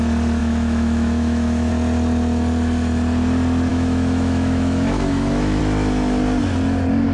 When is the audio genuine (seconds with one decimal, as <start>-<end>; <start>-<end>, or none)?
0.0-0.4; 1.7-3.7; 5.6-7.1